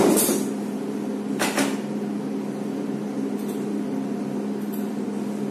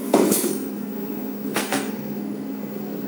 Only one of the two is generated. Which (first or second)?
second